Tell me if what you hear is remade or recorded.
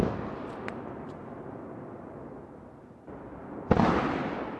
recorded